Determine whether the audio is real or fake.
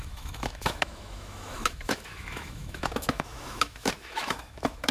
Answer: fake